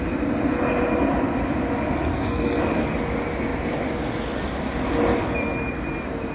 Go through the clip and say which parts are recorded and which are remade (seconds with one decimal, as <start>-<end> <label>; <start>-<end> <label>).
0.0-2.1 recorded; 2.1-2.6 remade; 2.6-6.3 recorded